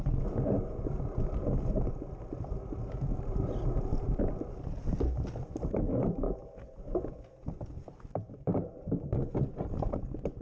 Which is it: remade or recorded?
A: recorded